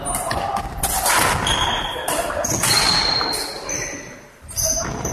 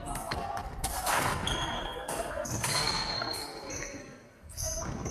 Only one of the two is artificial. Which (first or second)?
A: second